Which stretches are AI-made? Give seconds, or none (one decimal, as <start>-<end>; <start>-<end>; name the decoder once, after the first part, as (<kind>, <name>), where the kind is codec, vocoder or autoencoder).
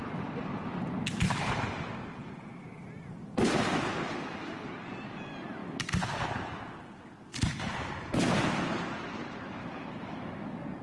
none